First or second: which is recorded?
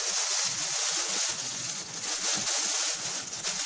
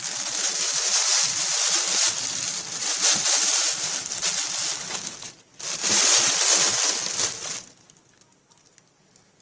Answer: second